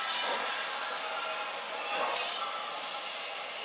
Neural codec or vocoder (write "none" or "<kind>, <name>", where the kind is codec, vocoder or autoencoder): none